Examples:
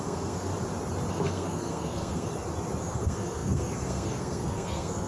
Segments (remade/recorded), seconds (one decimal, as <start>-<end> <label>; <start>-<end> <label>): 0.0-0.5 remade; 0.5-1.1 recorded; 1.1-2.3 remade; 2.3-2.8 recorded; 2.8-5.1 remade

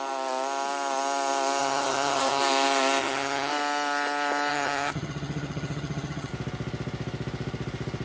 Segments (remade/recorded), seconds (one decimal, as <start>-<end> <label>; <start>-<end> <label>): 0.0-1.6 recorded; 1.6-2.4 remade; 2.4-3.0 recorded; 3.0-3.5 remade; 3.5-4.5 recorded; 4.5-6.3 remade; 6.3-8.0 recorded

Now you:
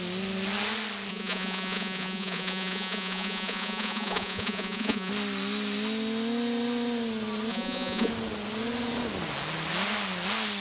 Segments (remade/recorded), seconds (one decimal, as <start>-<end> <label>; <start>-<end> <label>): 0.0-1.1 recorded; 1.1-5.1 remade; 5.1-7.5 recorded; 7.5-8.1 remade; 8.1-10.6 recorded

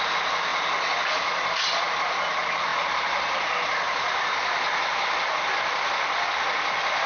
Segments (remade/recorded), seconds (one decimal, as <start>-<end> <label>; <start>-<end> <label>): 0.0-7.1 recorded

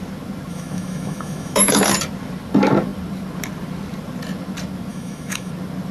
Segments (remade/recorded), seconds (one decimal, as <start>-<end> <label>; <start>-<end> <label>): 0.0-0.5 recorded; 0.5-1.9 remade; 1.9-4.9 recorded; 4.9-5.5 remade; 5.5-5.9 recorded

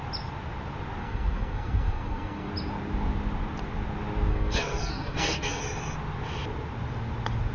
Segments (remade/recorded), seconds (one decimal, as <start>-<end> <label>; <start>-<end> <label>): 0.0-1.0 recorded; 1.0-2.5 remade; 2.5-4.3 recorded; 4.3-5.6 remade; 5.6-7.5 recorded

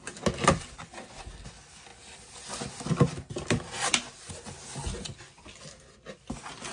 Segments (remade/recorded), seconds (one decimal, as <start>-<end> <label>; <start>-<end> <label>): 0.0-6.7 recorded